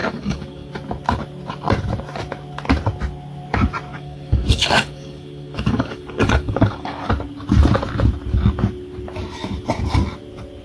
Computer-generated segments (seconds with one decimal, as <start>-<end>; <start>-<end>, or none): 0.0-0.7; 3.9-7.1